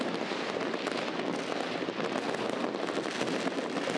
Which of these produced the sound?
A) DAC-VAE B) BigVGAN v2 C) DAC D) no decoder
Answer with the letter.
D